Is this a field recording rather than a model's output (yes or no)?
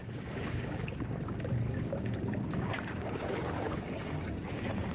no